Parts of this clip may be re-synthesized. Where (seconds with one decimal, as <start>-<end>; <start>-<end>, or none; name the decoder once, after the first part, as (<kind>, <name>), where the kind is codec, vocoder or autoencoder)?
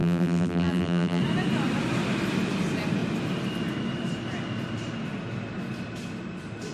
0.0-1.2 (vocoder, BigVGAN v2)